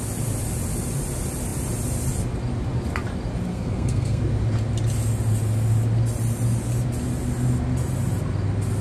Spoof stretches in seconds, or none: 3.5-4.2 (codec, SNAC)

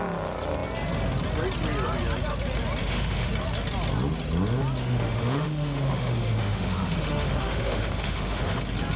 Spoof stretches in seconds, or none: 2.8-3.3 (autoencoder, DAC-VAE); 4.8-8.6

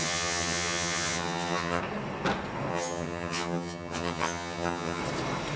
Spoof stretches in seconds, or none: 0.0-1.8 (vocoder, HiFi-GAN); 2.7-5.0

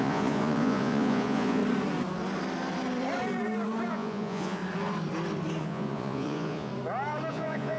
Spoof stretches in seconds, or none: 0.0-1.6 (vocoder, Vocos); 3.9-4.6; 5.6-6.7; 7.3-7.8

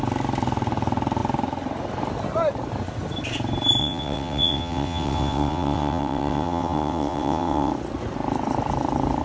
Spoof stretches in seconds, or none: 3.8-7.7 (vocoder, WaveNeXt)

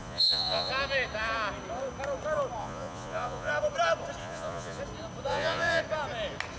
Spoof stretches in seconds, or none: 0.0-0.7 (vocoder, Vocos); 2.6-3.5; 4.2-4.8; 5.3-5.8

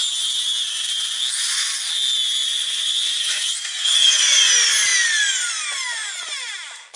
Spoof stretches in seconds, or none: 2.4-4.5 (vocoder, Vocos)

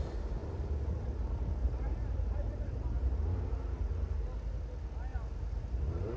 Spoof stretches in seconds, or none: 0.4-0.9 (vocoder, BigVGAN v2); 1.6-4.3; 5.1-6.2